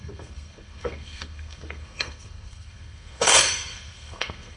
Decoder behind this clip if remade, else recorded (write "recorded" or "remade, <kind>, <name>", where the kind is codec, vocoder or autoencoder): remade, codec, SNAC